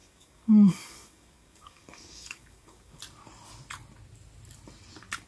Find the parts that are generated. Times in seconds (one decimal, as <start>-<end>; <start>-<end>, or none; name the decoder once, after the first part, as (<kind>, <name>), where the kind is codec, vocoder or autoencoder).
0.0-3.0 (codec, DAC)

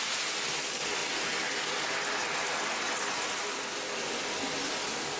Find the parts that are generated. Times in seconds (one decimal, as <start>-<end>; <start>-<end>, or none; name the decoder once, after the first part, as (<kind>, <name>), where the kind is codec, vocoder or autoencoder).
none

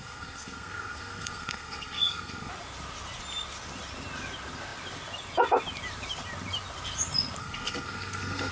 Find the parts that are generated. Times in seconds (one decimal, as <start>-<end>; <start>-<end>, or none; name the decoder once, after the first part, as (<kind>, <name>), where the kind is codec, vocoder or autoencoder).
0.0-2.5 (codec, SNAC); 7.4-8.5

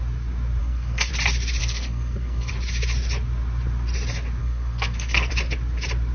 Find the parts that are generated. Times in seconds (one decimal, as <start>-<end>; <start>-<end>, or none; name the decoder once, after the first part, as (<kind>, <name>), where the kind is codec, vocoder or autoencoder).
0.6-1.1 (codec, SNAC); 1.6-2.5; 4.4-5.3

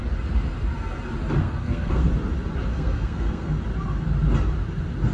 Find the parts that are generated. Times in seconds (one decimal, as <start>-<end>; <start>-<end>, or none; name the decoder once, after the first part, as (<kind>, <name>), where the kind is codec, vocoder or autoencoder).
1.4-2.1 (codec, SNAC); 2.7-3.5

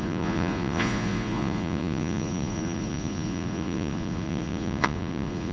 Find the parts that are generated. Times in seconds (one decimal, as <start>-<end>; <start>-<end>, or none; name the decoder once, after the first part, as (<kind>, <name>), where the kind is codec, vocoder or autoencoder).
0.0-5.5 (vocoder, Vocos)